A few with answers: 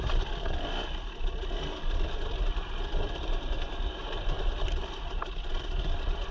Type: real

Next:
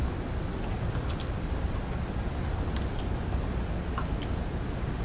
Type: fake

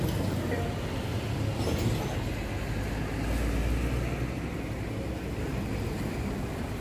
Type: real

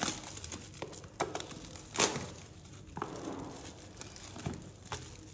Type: real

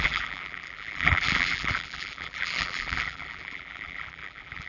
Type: fake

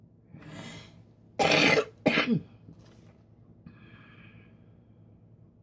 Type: real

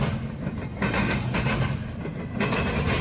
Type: real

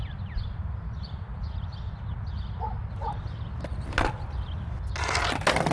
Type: real